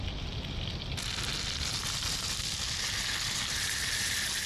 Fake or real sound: real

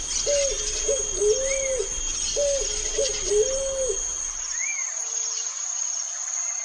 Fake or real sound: real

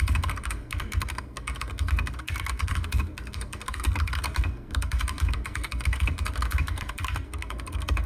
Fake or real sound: fake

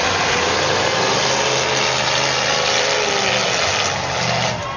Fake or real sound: real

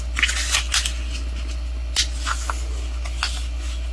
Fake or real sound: real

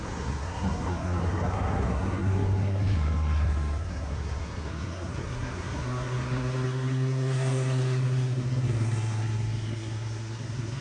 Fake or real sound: fake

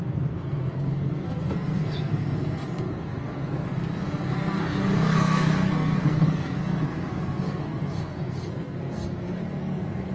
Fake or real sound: fake